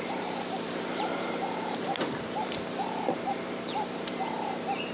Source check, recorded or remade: remade